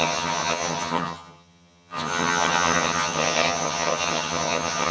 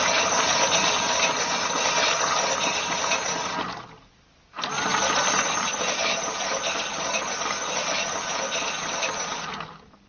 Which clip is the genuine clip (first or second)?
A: second